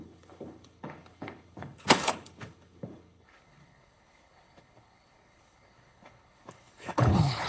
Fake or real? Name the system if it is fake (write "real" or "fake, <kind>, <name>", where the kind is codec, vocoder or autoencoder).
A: fake, codec, HILCodec